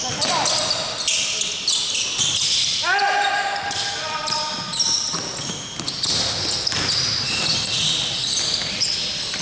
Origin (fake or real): real